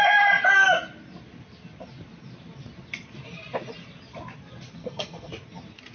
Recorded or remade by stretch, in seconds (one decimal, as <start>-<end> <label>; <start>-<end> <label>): 0.0-4.8 recorded; 4.8-5.3 remade; 5.3-5.9 recorded